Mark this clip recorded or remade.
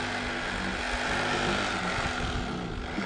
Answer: recorded